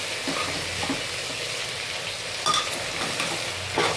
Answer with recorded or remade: recorded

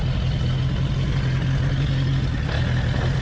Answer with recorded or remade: recorded